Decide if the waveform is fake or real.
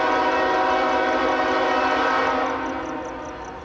real